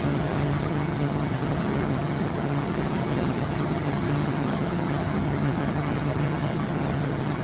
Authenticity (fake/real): fake